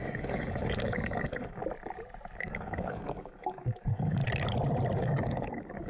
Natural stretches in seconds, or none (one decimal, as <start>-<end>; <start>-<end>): 1.6-2.4; 4.2-5.0